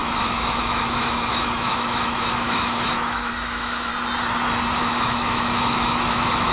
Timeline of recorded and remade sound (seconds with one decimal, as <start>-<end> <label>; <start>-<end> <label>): 0.0-3.9 remade; 3.9-4.8 recorded; 4.8-6.5 remade